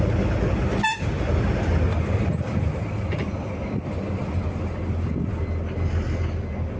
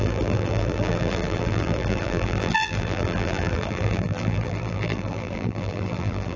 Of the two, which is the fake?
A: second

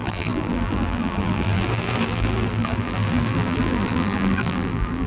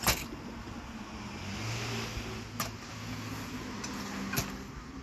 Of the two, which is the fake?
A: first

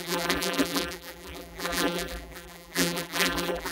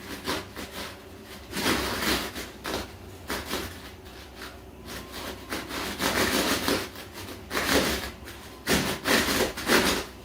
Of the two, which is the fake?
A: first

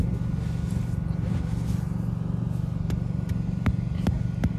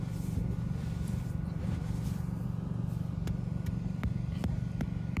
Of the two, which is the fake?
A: second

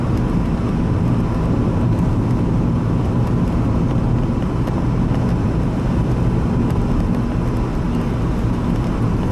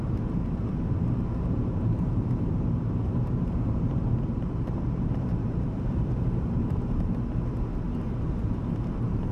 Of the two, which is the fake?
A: second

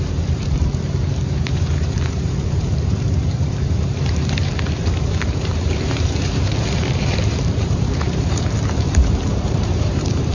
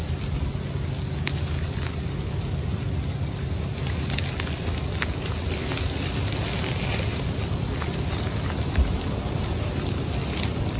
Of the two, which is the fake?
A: first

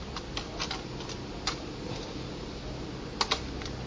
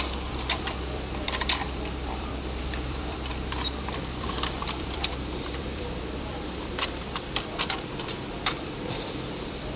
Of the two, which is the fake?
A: second